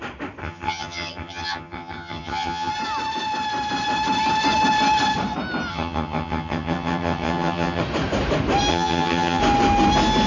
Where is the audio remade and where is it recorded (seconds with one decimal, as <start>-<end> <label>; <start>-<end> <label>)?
0.0-0.4 recorded; 0.4-2.7 remade; 2.7-5.7 recorded; 5.7-7.8 remade; 7.8-8.7 recorded; 8.7-9.4 remade; 9.4-10.3 recorded